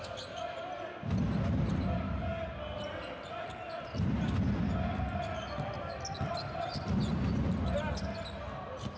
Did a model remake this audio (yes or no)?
no